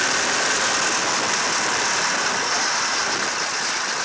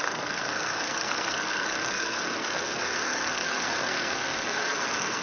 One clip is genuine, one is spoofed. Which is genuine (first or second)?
first